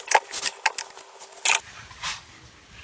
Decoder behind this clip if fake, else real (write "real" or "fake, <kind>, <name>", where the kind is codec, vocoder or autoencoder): real